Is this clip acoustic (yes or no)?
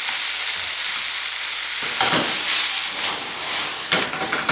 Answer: no